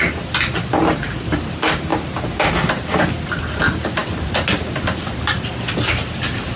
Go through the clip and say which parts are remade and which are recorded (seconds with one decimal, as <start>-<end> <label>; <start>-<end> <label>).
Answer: 0.0-6.6 recorded